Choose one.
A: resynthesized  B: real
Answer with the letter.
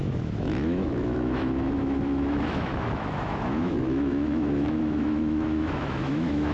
A